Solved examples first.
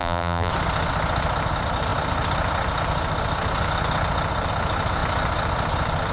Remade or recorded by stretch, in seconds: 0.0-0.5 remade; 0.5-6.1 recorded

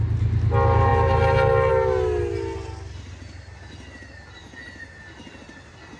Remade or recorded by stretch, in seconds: 0.0-6.0 recorded

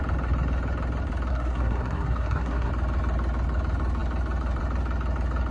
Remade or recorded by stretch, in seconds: 0.0-1.3 recorded; 1.3-2.7 remade; 2.7-5.5 recorded

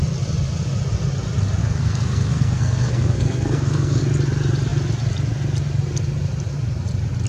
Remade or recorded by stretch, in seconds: 0.0-1.6 recorded; 1.6-4.0 remade; 4.0-7.3 recorded

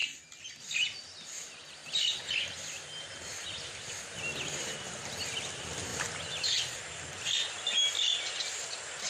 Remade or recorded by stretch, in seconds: 0.0-9.1 recorded